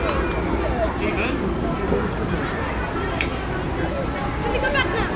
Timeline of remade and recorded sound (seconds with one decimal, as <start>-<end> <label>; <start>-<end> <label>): 0.0-5.2 recorded